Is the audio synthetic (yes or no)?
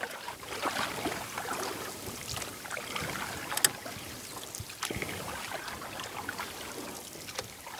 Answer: no